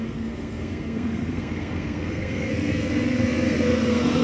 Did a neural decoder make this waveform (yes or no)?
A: yes